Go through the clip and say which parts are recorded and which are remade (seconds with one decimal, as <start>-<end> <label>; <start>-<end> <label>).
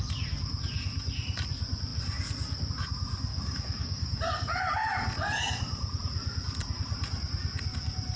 0.0-3.3 recorded; 3.3-4.2 remade; 4.2-8.2 recorded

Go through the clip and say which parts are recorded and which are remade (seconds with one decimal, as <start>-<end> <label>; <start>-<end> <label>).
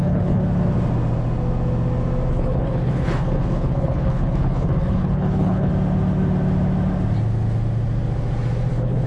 0.0-0.4 remade; 0.4-2.3 recorded; 2.3-5.7 remade; 5.7-8.7 recorded; 8.7-9.1 remade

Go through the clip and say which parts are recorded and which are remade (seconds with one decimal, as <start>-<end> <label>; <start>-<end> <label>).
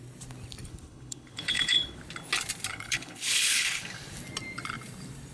0.0-0.6 recorded; 0.6-2.0 remade; 2.0-2.7 recorded; 2.7-3.8 remade; 3.8-5.3 recorded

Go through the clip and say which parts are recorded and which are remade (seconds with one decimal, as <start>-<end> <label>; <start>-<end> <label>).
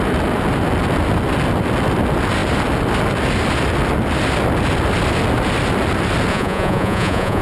0.0-6.3 recorded; 6.3-7.4 remade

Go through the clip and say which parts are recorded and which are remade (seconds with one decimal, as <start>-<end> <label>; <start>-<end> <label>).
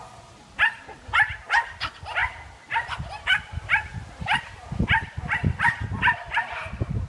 0.0-7.1 recorded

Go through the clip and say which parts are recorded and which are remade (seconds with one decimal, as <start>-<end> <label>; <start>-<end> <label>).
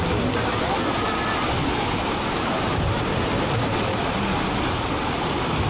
0.0-1.7 recorded; 1.7-3.1 remade; 3.1-5.7 recorded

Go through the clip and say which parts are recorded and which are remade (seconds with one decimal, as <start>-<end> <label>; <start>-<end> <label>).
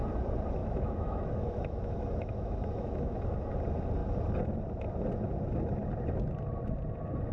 0.0-0.6 recorded; 0.6-3.5 remade; 3.5-7.3 recorded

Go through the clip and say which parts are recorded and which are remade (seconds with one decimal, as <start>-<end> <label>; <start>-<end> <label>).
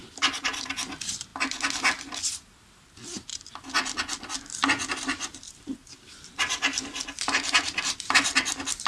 0.0-1.3 remade; 1.3-2.2 recorded; 2.2-3.3 remade; 3.3-4.9 recorded; 4.9-8.9 remade